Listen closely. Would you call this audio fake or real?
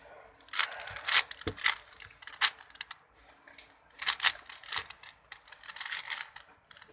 real